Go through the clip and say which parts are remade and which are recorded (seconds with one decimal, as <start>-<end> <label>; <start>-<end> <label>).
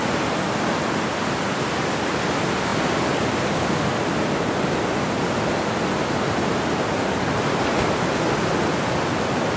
0.0-9.6 recorded